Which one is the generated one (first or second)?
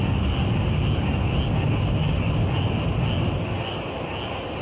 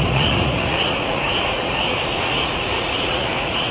second